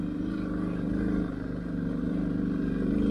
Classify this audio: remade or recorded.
recorded